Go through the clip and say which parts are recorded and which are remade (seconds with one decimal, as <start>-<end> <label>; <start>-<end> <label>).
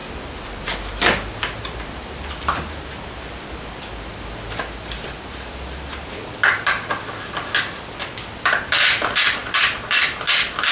0.0-4.6 recorded; 4.6-10.7 remade